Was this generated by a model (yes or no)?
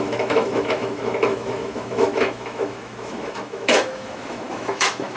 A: yes